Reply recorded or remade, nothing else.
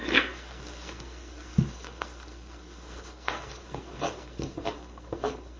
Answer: remade